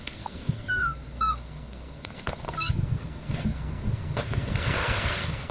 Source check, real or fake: fake